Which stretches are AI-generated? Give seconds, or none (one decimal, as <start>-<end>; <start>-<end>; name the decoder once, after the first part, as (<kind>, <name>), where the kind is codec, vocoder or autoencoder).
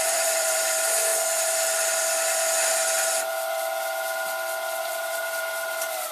0.0-1.1 (vocoder, BigVGAN v2); 4.8-6.1